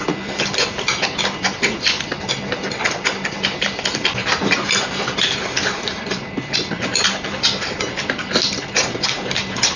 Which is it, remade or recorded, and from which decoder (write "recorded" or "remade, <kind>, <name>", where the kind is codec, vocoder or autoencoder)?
remade, vocoder, BigVGAN v2